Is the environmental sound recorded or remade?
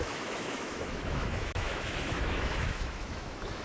remade